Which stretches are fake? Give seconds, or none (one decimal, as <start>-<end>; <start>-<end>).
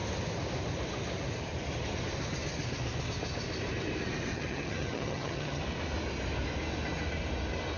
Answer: 4.3-5.6